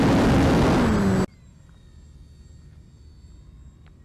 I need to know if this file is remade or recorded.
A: recorded